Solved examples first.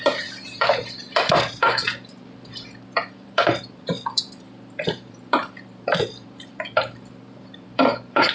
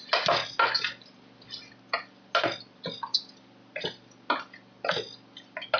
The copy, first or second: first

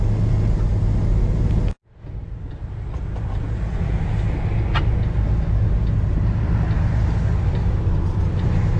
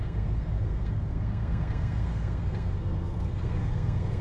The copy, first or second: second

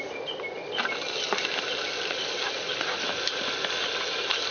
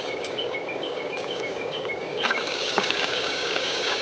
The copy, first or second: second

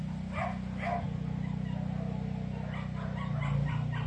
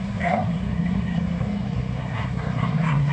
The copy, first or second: second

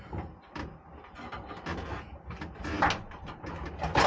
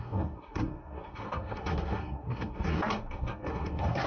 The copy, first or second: second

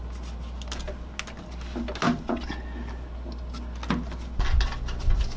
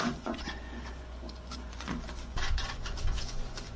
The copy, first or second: second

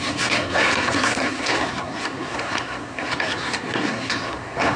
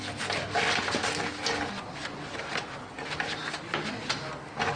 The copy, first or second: first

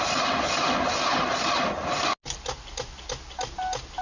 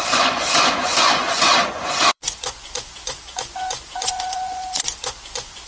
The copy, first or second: second